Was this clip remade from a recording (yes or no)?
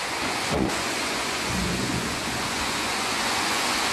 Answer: yes